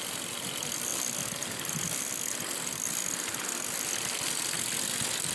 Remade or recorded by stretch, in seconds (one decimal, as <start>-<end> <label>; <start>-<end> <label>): 0.0-5.3 recorded